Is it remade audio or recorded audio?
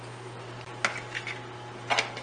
recorded